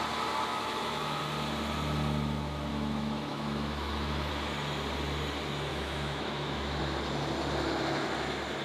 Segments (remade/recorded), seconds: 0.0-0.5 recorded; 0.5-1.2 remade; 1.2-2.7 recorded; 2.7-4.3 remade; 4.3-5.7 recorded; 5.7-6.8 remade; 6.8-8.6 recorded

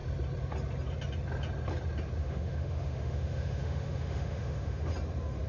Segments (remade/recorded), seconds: 0.0-2.2 recorded; 2.2-4.9 remade; 4.9-5.5 recorded